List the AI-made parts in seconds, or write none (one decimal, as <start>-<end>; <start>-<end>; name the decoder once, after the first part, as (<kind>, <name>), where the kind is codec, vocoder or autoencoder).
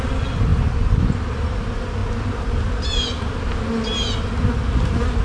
none